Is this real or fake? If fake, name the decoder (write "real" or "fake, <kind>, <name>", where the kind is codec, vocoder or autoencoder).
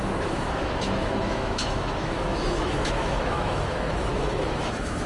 fake, autoencoder, DAC-VAE